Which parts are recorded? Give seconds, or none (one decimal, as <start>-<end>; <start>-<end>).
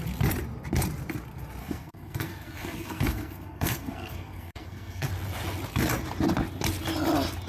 0.0-1.6; 5.1-7.5